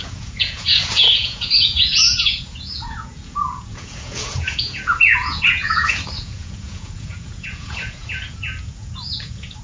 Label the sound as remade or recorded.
remade